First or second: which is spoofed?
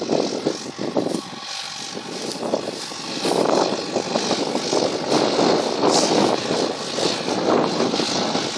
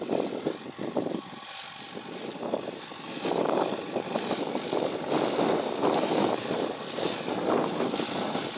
second